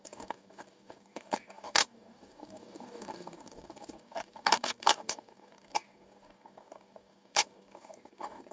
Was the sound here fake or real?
fake